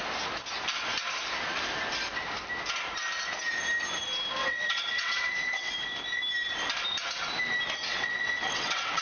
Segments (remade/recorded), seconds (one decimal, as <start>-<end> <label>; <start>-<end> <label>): 0.0-4.4 recorded; 4.4-5.7 remade; 5.7-7.9 recorded; 7.9-9.0 remade